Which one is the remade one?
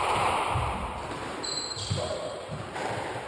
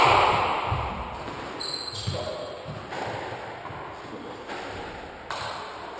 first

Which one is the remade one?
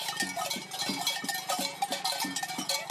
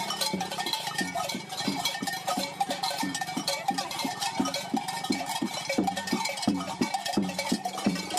second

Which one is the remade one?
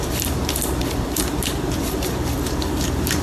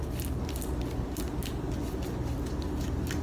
first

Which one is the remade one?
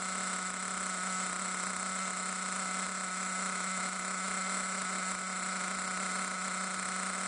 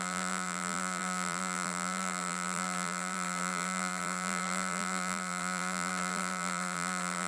second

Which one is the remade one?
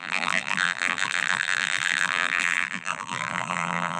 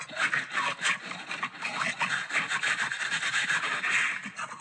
first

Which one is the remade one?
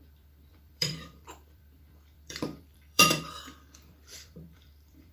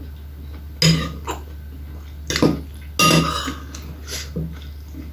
first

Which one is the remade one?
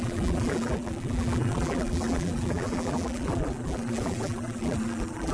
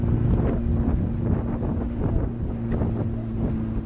first